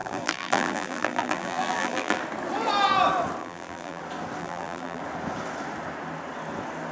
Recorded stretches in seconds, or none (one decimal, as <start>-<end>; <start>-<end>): 2.2-3.4; 4.0-4.4; 5.0-6.9